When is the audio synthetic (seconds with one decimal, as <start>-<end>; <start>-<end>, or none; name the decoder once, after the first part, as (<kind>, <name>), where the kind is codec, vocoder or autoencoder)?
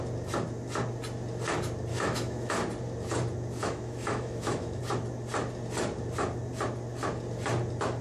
1.9-2.5 (autoencoder, DAC-VAE); 3.6-4.8